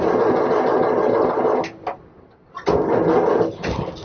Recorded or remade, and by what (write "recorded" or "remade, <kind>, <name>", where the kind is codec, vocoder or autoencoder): recorded